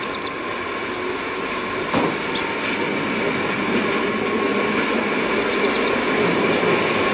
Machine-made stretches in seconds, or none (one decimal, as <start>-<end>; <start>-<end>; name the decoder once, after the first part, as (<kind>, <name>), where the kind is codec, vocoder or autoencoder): none